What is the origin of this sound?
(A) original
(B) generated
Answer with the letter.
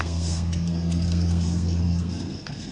B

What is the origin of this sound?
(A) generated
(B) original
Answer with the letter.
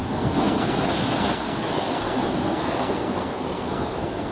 A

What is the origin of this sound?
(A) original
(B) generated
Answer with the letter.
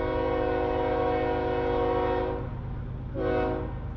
A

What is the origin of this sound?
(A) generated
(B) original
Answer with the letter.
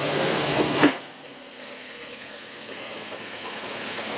A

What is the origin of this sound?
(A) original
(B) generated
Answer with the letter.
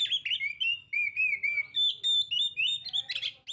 A